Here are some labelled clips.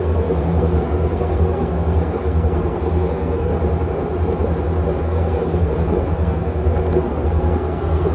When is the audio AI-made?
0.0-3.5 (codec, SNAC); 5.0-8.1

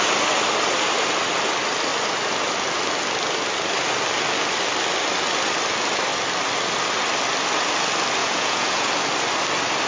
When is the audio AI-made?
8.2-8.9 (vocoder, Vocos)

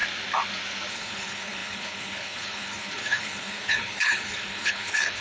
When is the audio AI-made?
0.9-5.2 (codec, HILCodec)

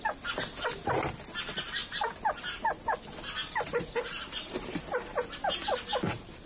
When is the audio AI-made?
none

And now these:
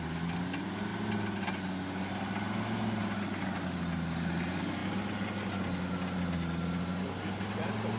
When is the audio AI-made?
none

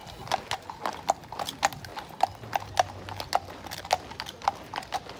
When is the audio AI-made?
none

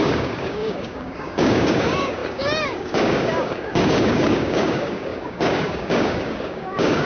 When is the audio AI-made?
0.0-7.1 (codec, DAC)